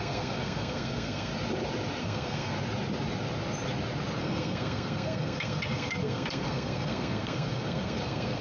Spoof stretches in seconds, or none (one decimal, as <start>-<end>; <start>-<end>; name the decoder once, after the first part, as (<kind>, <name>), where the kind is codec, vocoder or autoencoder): 0.0-1.3 (codec, SNAC); 2.0-2.5; 4.2-8.4